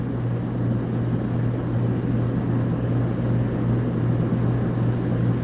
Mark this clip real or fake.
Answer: real